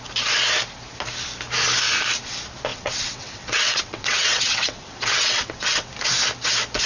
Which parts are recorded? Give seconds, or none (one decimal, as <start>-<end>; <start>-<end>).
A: 0.0-2.7; 5.9-6.9